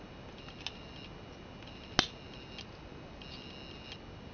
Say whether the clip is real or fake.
real